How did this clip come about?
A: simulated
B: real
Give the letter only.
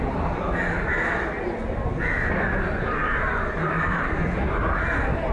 B